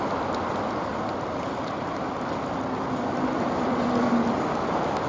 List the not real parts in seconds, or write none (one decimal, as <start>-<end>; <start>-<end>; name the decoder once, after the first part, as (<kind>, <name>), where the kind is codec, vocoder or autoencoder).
none